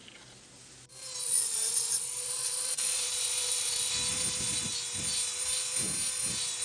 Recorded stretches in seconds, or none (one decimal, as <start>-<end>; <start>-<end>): 0.0-1.2; 3.9-6.6